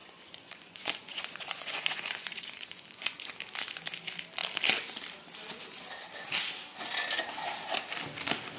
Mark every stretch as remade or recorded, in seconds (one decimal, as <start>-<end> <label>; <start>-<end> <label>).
0.0-3.3 remade; 3.3-8.6 recorded